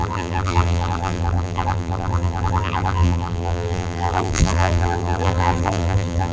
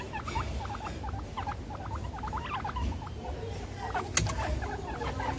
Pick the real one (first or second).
second